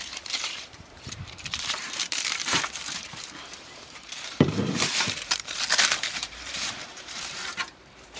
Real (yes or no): no